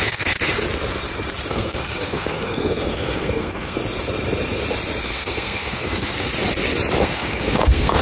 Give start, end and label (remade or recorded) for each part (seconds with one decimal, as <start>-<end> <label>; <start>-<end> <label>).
0.0-0.6 remade; 0.6-1.5 recorded; 1.5-3.8 remade; 3.8-5.0 recorded; 5.0-6.3 remade; 6.3-7.0 recorded; 7.0-8.0 remade

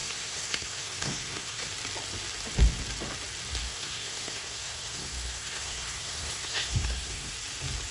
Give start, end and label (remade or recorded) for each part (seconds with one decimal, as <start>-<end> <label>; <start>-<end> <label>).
0.0-1.7 remade; 1.7-3.6 recorded; 3.6-7.3 remade; 7.3-7.9 recorded

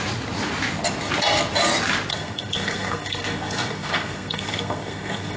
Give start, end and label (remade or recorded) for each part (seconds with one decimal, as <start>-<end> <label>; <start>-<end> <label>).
0.0-2.1 recorded; 2.1-5.4 remade

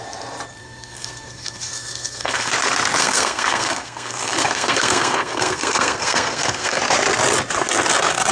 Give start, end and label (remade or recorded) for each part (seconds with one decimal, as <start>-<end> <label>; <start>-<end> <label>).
0.0-0.6 recorded; 0.6-2.5 remade; 2.5-3.0 recorded; 3.0-6.8 remade; 6.8-8.3 recorded

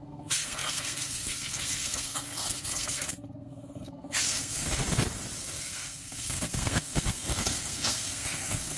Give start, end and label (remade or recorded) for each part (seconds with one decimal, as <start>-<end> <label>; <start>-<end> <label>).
0.0-4.8 remade; 4.8-5.4 recorded; 5.4-8.8 remade

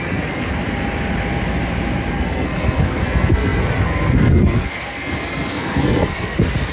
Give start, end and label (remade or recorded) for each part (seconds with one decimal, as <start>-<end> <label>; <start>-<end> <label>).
0.0-0.5 remade; 0.5-2.1 recorded; 2.1-6.7 remade